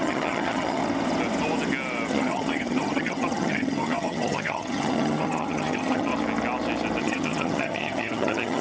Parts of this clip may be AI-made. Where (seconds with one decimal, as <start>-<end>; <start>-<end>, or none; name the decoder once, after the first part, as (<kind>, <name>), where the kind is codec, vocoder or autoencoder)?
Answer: 0.0-0.8 (vocoder, HiFi-GAN); 2.1-6.1; 7.0-8.6